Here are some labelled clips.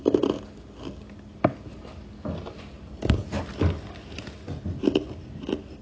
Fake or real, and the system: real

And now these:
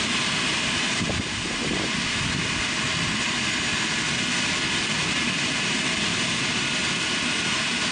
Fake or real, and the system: fake, vocoder, BigVGAN v2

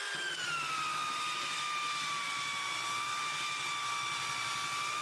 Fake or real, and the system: real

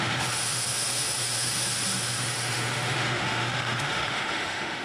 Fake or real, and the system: fake, autoencoder, DAC-VAE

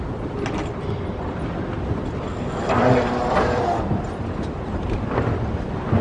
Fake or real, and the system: real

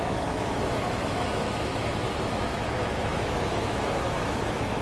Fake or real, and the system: fake, autoencoder, DAC-VAE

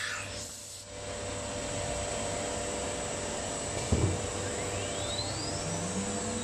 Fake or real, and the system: real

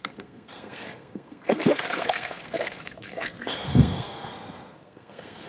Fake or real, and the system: fake, codec, SNAC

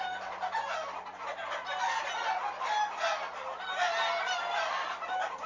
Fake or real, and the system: real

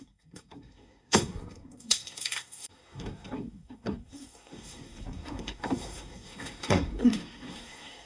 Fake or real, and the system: fake, codec, SNAC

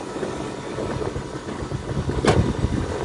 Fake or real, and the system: real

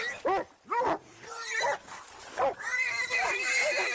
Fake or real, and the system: real